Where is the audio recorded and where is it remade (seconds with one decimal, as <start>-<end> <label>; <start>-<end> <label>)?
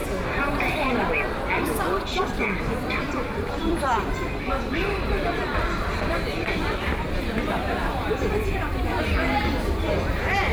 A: 0.0-2.2 recorded; 2.2-8.7 remade; 8.7-9.5 recorded; 9.5-10.5 remade